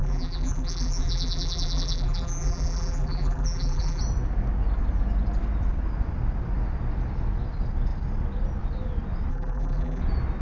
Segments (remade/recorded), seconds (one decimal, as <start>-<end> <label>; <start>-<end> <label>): 0.0-4.0 remade; 4.0-9.3 recorded; 9.3-10.0 remade; 10.0-10.4 recorded